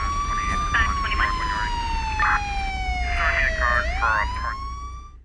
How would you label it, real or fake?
real